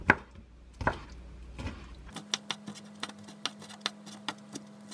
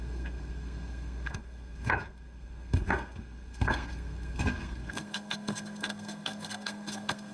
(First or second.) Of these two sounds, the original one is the first